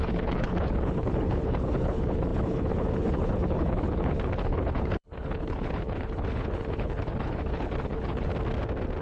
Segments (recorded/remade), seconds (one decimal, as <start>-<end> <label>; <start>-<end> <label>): 0.0-8.3 remade; 8.3-9.0 recorded